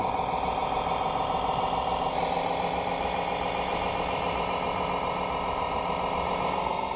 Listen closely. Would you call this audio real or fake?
real